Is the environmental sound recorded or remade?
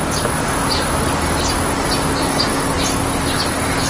recorded